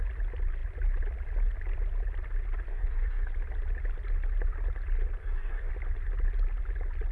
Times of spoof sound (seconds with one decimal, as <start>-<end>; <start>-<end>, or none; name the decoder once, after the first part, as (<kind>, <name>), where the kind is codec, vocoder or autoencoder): 2.7-3.3 (codec, SNAC); 5.2-5.7